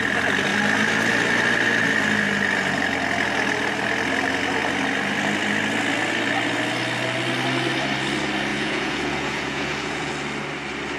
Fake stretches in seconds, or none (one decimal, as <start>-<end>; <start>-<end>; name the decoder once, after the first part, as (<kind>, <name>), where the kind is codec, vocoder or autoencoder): 8.5-10.1 (vocoder, Vocos)